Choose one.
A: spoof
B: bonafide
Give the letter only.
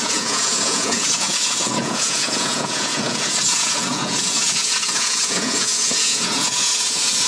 A